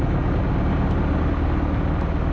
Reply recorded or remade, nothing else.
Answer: recorded